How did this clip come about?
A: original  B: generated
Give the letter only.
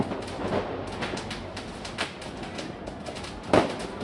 A